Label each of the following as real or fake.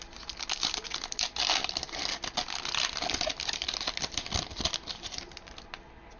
real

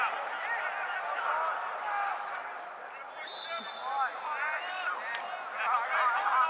real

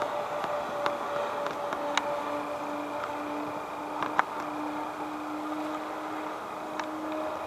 real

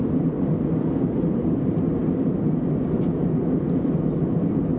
fake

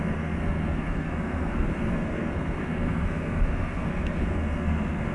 fake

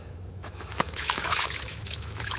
fake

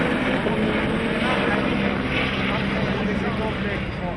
real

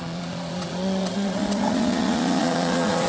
fake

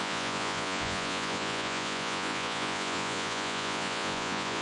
fake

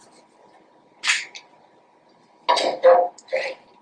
real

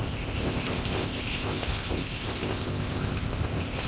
fake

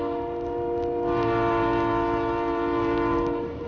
real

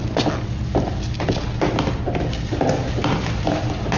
real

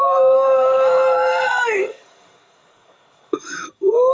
fake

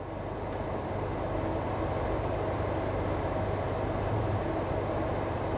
real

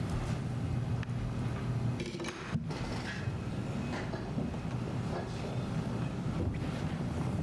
real